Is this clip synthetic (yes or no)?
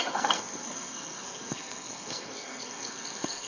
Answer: yes